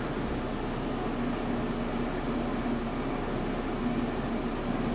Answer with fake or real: real